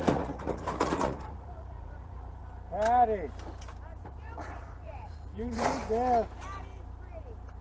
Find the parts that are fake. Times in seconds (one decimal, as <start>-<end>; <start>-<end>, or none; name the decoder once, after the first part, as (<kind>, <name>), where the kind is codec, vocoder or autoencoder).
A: 0.0-2.4 (vocoder, Vocos); 4.0-5.8